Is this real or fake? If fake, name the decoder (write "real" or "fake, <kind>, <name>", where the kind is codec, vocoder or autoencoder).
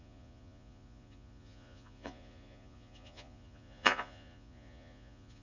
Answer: fake, vocoder, Vocos